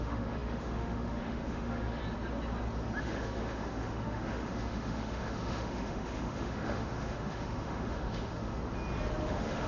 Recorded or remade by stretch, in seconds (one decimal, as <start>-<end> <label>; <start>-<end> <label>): 0.0-2.0 remade; 2.0-3.0 recorded; 3.0-8.5 remade; 8.5-9.2 recorded; 9.2-9.7 remade